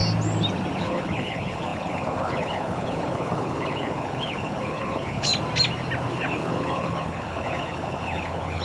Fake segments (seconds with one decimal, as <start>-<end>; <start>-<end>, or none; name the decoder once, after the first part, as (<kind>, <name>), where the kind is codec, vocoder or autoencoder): 0.8-5.3 (codec, HILCodec); 6.1-8.6